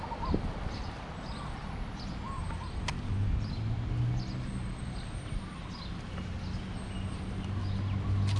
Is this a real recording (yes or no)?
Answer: yes